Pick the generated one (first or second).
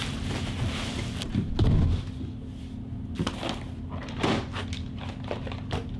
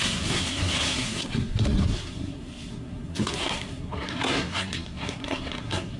second